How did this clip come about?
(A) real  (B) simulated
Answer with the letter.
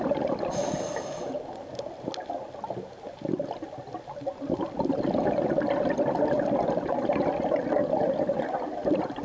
A